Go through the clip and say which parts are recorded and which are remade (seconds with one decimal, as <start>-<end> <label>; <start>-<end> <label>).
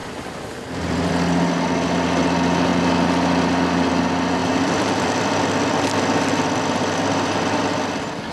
0.0-1.1 remade; 1.1-4.4 recorded; 4.4-5.2 remade; 5.2-8.3 recorded